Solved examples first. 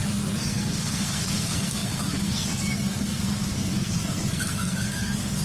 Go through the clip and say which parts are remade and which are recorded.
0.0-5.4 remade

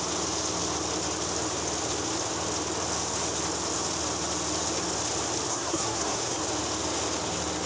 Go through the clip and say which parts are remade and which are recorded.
0.0-5.5 recorded; 5.5-6.4 remade; 6.4-7.7 recorded

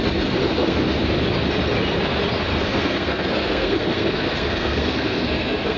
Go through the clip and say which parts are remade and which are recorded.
0.0-0.4 recorded; 0.4-1.0 remade; 1.0-2.5 recorded; 2.5-5.8 remade